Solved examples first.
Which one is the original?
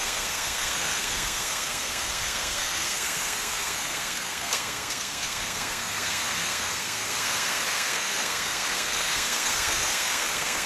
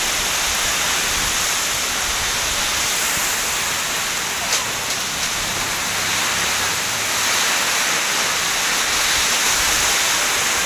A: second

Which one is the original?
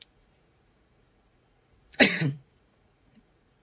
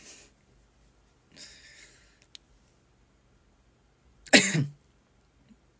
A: second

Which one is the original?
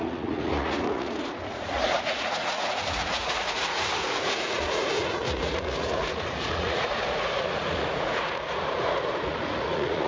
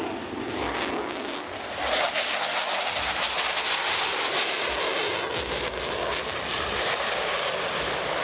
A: second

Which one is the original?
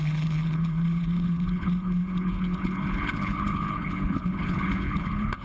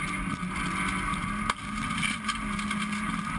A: second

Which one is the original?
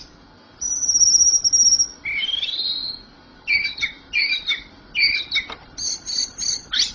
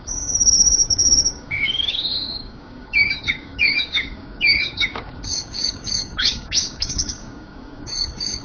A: first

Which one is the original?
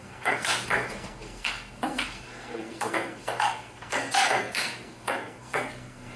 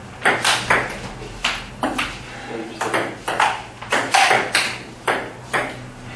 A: second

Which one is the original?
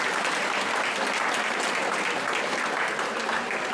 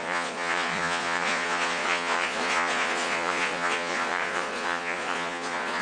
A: first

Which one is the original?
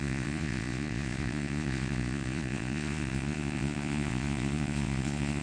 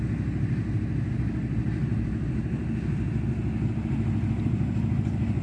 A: second